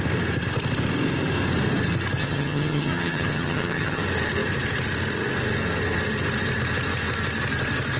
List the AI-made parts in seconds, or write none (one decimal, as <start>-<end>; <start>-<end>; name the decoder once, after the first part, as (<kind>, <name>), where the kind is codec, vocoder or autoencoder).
2.2-4.0 (vocoder, HiFi-GAN)